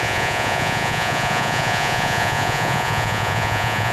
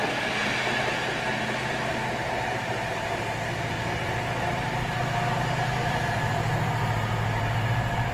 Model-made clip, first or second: first